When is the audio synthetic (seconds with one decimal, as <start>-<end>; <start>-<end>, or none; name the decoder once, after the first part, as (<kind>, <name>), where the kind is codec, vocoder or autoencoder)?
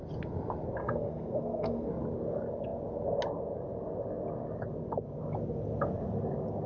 0.8-1.9 (codec, SNAC)